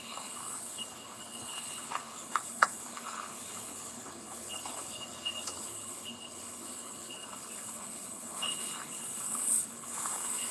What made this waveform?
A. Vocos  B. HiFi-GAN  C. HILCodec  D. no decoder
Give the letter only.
C